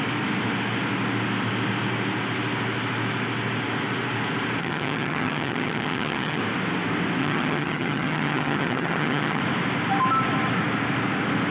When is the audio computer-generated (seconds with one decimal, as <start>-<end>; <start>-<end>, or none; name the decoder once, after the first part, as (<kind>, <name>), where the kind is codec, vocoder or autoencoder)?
4.6-6.4 (vocoder, HiFi-GAN); 7.2-9.4